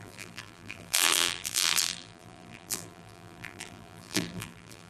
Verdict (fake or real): fake